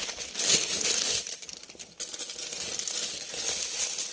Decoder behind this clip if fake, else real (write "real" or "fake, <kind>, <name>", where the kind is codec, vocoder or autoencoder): real